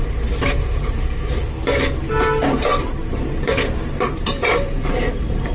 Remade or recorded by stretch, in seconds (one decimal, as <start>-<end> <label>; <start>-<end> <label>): 0.0-1.4 remade; 1.4-2.1 recorded; 2.1-5.5 remade